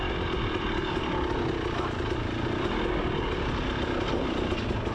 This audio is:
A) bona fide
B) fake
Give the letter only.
A